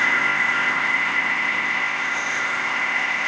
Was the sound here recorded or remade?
remade